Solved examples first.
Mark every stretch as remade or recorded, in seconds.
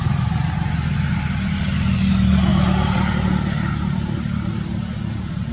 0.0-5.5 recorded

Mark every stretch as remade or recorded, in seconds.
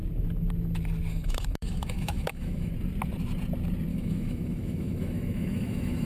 0.0-1.1 recorded; 1.1-2.7 remade; 2.7-3.9 recorded; 3.9-6.1 remade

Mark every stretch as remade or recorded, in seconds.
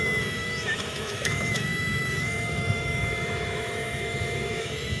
0.0-5.0 remade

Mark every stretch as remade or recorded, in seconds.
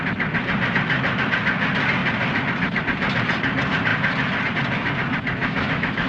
0.0-5.4 recorded; 5.4-6.1 remade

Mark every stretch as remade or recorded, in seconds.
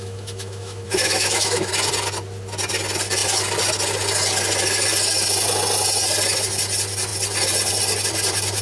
0.0-1.7 remade; 1.7-8.6 recorded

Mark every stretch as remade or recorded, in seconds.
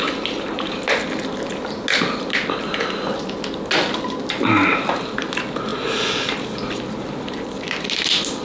0.0-8.4 recorded